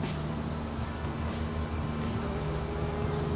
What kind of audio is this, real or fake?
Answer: real